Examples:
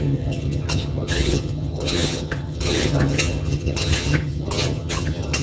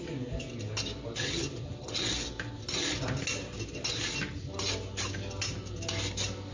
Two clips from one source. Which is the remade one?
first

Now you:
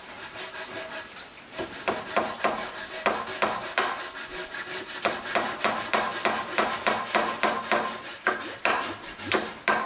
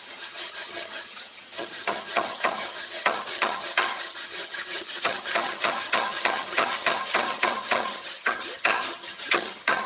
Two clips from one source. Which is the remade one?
second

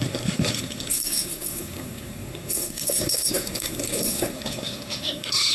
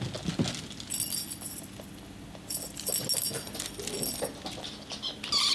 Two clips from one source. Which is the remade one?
first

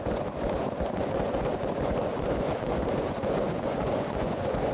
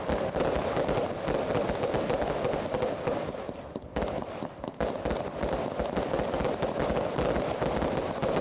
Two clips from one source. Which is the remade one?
first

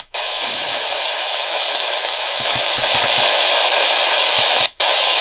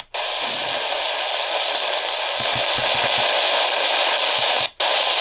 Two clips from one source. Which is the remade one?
first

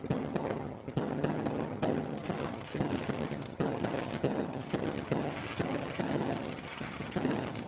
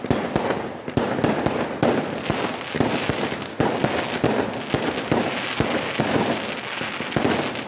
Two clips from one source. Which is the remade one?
first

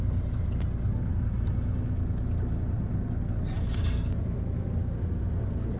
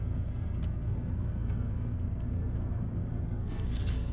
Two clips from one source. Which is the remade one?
second